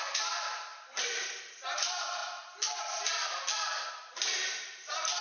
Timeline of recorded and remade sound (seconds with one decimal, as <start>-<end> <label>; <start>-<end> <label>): 0.0-5.2 remade